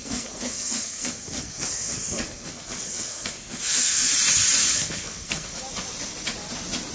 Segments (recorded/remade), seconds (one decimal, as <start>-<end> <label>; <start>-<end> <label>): 0.0-4.1 remade; 4.1-4.6 recorded; 4.6-5.6 remade; 5.6-6.9 recorded